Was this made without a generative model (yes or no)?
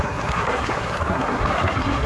no